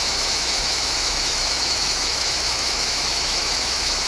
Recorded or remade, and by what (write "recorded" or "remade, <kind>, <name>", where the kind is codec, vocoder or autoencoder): remade, autoencoder, DAC-VAE